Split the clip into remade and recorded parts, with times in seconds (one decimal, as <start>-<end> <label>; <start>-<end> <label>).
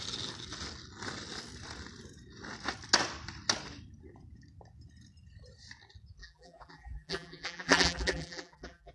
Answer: 0.0-6.2 recorded; 6.2-8.9 remade